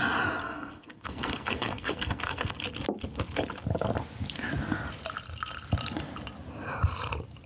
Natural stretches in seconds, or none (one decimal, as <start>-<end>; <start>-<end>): 0.0-0.4; 2.6-7.5